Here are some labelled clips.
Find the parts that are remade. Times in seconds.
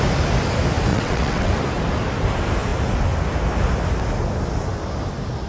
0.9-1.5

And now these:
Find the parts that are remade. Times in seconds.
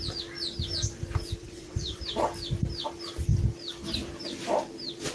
1.4-2.0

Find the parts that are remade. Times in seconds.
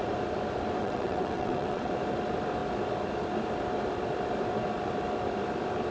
0.8-1.9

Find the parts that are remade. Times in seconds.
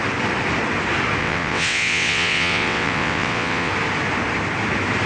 1.2-3.7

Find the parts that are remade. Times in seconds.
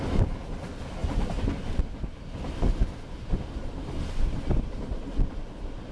none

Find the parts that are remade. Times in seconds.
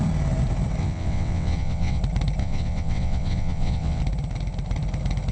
0.8-2.0; 2.4-4.0